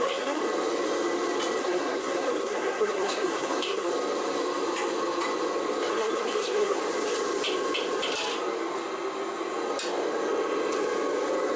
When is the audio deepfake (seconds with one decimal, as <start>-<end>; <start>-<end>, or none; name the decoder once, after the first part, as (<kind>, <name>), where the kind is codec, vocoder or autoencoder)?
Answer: 0.0-0.4 (codec, SNAC); 1.6-3.9; 5.9-6.8